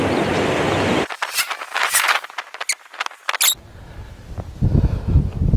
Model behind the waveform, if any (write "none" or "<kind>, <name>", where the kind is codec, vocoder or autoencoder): none